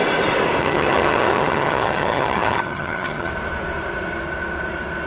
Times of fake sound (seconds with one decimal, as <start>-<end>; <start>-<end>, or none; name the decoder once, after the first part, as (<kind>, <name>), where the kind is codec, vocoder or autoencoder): 0.6-3.3 (vocoder, HiFi-GAN)